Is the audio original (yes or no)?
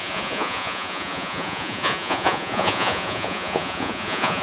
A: no